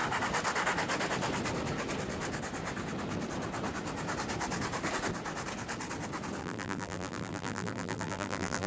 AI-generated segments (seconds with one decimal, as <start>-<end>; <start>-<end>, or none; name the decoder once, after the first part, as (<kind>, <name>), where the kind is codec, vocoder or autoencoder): 6.4-8.7 (vocoder, BigVGAN v2)